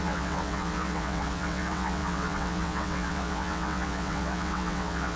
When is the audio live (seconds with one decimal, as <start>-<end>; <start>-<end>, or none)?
none